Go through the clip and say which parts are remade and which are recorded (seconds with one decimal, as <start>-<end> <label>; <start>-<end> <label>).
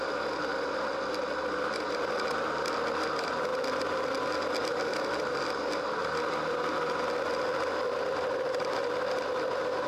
0.0-9.9 recorded